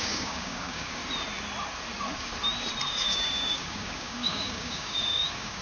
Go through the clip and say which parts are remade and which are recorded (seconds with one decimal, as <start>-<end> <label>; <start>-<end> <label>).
0.0-1.0 remade; 1.0-2.9 recorded; 2.9-5.6 remade